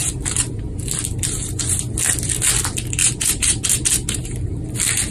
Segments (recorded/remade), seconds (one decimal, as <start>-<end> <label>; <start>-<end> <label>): 0.0-0.6 remade; 0.6-3.0 recorded; 3.0-4.6 remade; 4.6-5.1 recorded